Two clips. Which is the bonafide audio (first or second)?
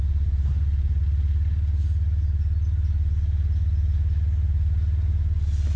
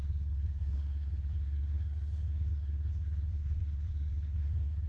first